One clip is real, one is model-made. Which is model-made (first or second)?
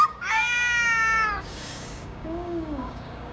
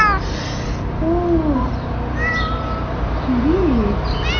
first